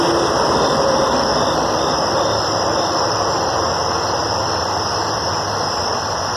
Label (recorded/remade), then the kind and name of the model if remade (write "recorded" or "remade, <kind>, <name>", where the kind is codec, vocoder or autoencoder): remade, vocoder, BigVGAN v2